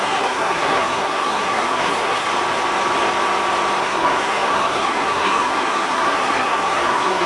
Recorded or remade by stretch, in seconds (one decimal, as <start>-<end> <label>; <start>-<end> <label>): 0.0-2.3 remade; 2.3-3.8 recorded; 3.8-7.3 remade